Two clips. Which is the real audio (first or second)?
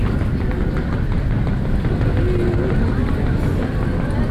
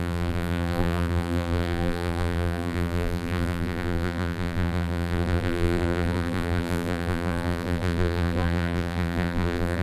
first